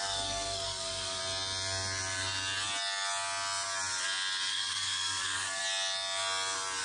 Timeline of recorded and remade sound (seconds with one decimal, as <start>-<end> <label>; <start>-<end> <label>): 0.0-1.2 remade; 1.2-4.5 recorded; 4.5-5.6 remade; 5.6-6.8 recorded